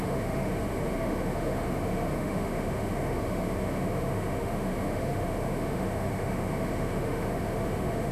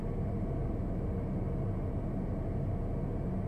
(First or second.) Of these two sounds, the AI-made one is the first